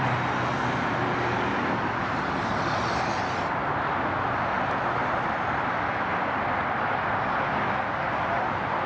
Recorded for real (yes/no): yes